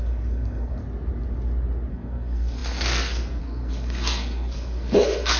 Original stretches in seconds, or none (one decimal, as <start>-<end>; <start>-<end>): 0.8-1.9